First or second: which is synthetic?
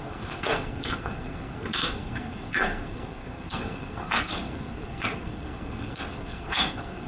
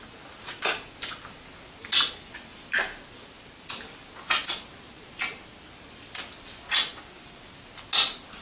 first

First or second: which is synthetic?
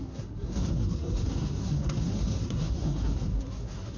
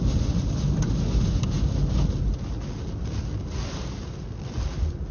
first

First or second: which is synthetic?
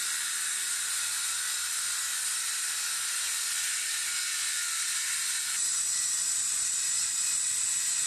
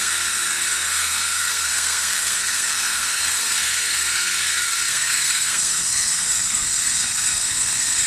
second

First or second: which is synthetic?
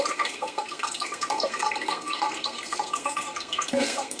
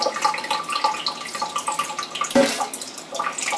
first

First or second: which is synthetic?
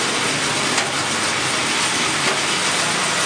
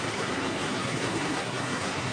second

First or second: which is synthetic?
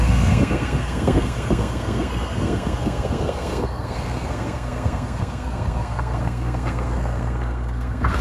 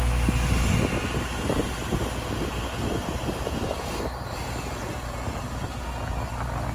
first